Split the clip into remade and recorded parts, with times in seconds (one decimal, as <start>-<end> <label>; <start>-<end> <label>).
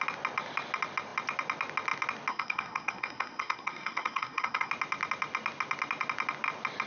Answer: 0.0-2.3 recorded; 2.3-4.7 remade; 4.7-6.9 recorded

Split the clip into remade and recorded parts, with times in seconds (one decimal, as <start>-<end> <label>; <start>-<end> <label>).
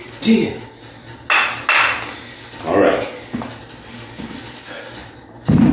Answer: 0.0-5.7 recorded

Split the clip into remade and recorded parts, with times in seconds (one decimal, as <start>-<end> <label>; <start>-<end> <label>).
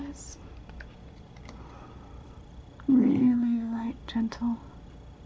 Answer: 0.0-3.0 recorded; 3.0-3.9 remade; 3.9-5.3 recorded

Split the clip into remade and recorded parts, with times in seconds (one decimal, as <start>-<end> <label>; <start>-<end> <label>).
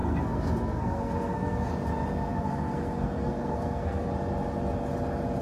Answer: 0.0-1.7 remade; 1.7-2.3 recorded; 2.3-4.1 remade; 4.1-5.4 recorded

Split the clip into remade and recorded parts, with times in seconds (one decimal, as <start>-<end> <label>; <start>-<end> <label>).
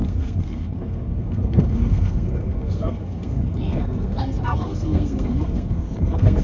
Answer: 0.0-6.4 remade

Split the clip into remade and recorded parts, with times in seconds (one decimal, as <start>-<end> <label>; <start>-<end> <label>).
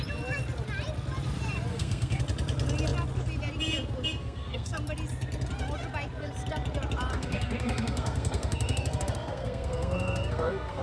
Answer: 0.0-1.7 recorded; 1.7-2.2 remade; 2.2-4.2 recorded; 4.2-4.8 remade; 4.8-7.1 recorded; 7.1-10.8 remade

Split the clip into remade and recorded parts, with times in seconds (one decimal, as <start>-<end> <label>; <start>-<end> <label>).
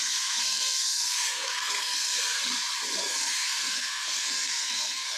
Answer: 0.0-2.4 remade; 2.4-3.0 recorded; 3.0-5.2 remade